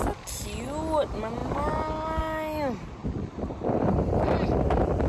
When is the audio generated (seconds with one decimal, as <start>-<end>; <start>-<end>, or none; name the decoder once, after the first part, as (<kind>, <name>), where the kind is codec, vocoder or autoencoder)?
none